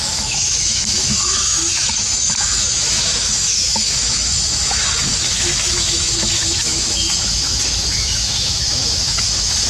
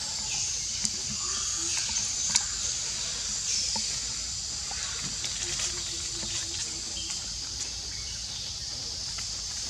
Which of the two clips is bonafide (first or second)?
second